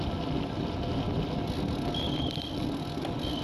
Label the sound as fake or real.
real